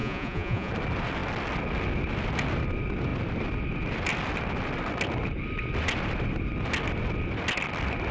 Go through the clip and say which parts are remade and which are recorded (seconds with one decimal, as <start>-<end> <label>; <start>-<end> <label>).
0.0-0.7 remade; 0.7-8.1 recorded